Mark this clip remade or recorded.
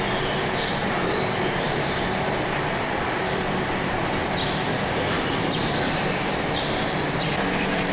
remade